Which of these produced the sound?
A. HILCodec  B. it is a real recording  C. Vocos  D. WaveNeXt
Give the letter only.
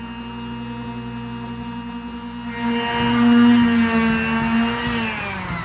B